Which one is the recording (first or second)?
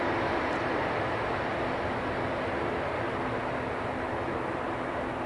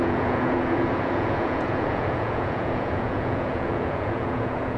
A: first